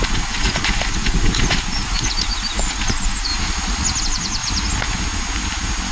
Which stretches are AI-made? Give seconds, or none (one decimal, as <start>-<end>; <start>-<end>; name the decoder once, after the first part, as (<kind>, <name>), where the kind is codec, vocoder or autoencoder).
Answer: 0.0-3.3 (vocoder, Vocos); 4.0-4.4